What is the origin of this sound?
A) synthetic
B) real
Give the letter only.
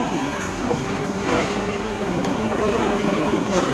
A